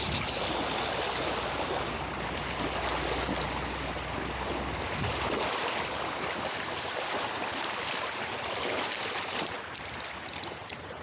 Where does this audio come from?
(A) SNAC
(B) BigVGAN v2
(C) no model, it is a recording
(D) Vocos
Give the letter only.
C